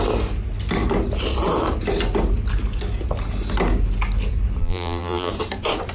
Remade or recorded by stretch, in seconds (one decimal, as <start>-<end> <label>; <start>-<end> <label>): 0.0-4.6 recorded; 4.6-5.3 remade; 5.3-5.9 recorded